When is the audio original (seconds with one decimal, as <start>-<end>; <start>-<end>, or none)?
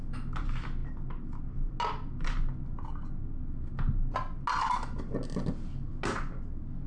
0.0-6.9